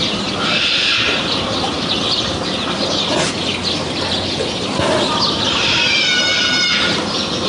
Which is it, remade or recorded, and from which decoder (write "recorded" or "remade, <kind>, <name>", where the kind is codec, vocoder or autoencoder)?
recorded